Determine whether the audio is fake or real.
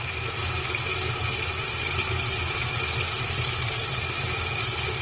real